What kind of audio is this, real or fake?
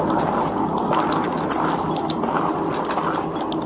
real